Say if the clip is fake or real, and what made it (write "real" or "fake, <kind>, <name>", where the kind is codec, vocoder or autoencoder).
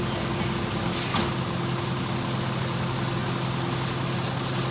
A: real